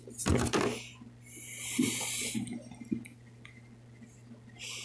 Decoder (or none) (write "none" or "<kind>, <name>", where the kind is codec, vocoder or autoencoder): none